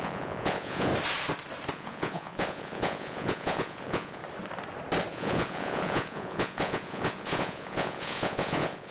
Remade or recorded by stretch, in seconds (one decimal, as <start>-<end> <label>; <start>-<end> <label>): 0.0-0.9 remade; 0.9-1.7 recorded; 1.7-4.2 remade; 4.2-5.1 recorded; 5.1-8.9 remade